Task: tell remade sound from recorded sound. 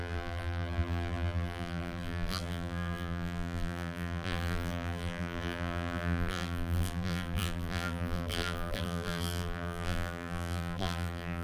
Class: remade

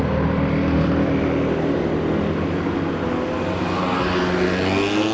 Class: recorded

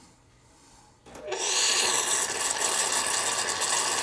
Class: recorded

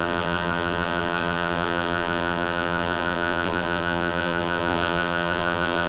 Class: remade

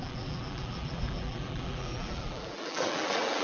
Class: remade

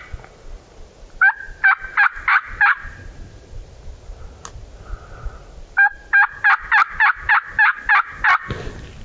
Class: recorded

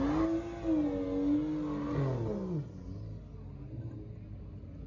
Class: recorded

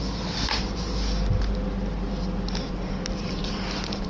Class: recorded